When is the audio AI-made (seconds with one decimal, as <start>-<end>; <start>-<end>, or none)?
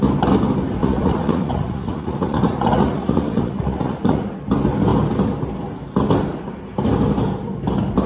0.8-4.2